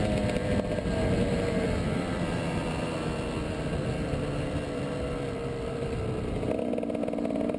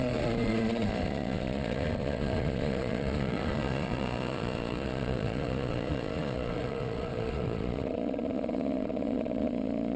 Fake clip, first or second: second